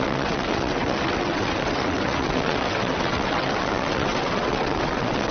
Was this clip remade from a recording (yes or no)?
yes